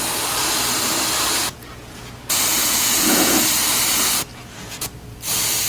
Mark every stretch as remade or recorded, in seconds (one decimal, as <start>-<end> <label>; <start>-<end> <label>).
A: 0.0-1.4 recorded; 1.4-2.0 remade; 2.0-2.5 recorded; 2.5-3.4 remade; 3.4-4.3 recorded; 4.3-4.9 remade; 4.9-5.7 recorded